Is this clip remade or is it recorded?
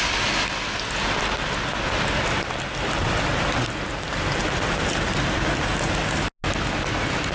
recorded